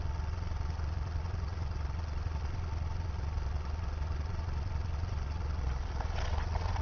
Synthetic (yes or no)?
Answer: yes